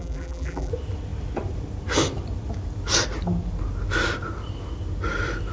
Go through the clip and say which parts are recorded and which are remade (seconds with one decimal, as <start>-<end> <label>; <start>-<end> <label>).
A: 0.0-0.7 remade; 0.7-5.5 recorded